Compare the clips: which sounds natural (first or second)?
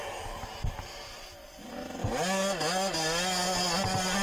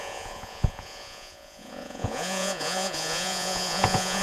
first